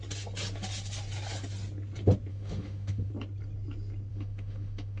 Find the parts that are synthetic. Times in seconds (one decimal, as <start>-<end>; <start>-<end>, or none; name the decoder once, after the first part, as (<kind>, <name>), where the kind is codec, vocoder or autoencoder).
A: 2.3-3.1 (autoencoder, DAC-VAE); 4.1-5.0